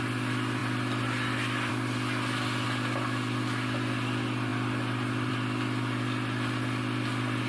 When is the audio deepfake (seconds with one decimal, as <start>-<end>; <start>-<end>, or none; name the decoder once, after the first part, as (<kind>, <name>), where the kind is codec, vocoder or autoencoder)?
none